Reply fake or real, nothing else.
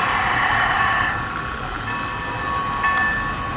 real